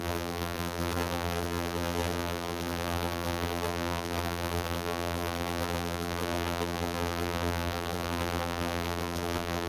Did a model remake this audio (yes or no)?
yes